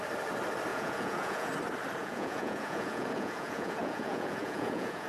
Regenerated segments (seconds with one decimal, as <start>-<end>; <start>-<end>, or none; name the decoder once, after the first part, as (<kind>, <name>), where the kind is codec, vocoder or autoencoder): 0.7-1.5 (vocoder, Vocos); 2.0-5.1